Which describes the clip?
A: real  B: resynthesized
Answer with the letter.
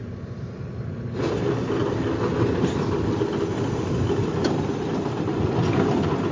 A